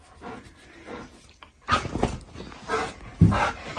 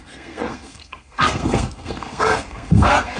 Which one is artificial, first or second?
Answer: second